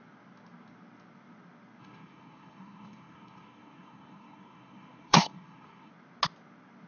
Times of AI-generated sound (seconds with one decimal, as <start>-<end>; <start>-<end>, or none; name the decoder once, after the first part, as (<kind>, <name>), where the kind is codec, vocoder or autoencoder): 1.8-5.9 (codec, SNAC)